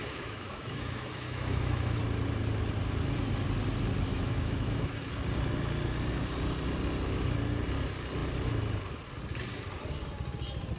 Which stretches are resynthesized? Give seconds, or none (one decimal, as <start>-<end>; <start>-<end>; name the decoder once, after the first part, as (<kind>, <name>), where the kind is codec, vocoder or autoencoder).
0.0-2.0 (autoencoder, DAC-VAE); 4.1-5.0